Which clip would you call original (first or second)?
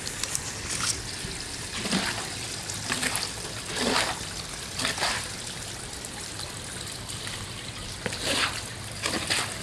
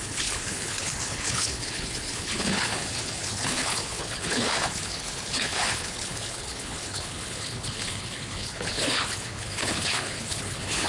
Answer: first